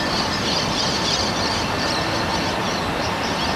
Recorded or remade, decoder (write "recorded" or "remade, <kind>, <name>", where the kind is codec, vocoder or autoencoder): recorded